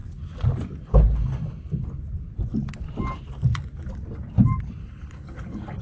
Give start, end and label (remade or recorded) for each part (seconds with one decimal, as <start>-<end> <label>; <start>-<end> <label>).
0.0-4.8 recorded; 4.8-5.8 remade